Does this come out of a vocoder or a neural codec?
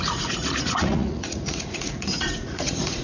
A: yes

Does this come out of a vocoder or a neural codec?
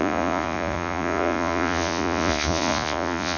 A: yes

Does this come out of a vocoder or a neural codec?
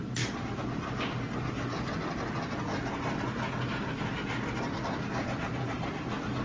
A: no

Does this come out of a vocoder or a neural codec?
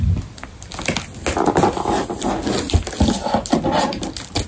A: no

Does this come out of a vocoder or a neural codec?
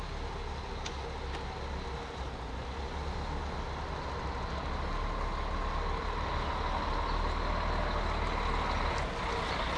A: no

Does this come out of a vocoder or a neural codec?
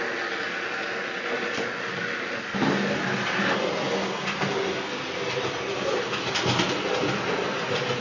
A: no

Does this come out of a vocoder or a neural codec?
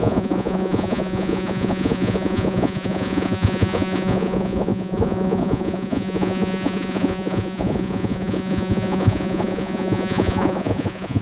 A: yes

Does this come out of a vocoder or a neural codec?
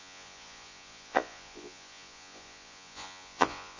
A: yes